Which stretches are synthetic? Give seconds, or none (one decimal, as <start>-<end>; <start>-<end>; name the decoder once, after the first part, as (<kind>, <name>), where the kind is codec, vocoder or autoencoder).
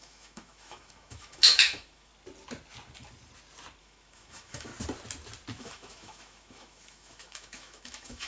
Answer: 0.0-2.1 (autoencoder, DAC-VAE); 3.8-4.7; 5.6-8.3